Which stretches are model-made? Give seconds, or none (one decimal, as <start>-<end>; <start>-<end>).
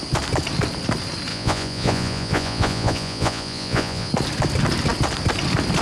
1.3-4.1